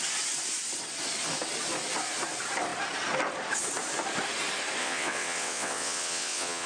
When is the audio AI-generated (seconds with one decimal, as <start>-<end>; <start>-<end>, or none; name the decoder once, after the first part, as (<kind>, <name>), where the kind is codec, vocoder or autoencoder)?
4.8-6.7 (vocoder, WaveNeXt)